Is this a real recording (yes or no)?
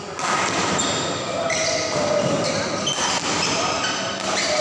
yes